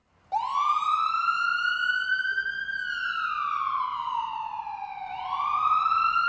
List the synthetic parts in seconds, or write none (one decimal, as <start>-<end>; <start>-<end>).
0.0-1.1